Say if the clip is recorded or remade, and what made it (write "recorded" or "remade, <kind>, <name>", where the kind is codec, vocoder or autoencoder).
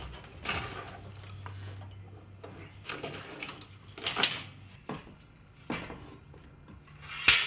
recorded